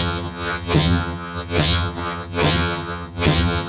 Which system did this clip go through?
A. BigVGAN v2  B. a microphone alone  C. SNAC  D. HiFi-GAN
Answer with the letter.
D